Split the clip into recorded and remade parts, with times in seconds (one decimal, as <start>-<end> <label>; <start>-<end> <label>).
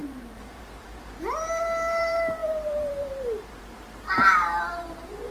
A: 0.0-5.3 remade